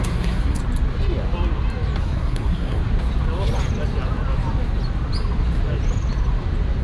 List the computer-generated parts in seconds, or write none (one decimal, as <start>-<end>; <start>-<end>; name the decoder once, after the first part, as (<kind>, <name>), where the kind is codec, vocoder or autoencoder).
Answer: 0.0-0.6 (codec, SNAC); 2.0-2.8

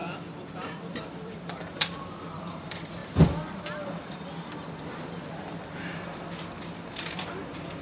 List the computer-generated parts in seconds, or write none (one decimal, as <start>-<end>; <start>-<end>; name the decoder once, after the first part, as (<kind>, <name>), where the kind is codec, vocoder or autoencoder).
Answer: 1.0-7.8 (vocoder, BigVGAN v2)

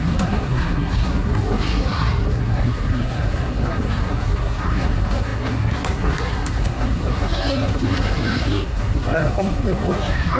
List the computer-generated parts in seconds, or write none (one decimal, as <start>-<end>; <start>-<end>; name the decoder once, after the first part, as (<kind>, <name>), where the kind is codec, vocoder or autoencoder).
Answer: 0.0-10.4 (codec, SNAC)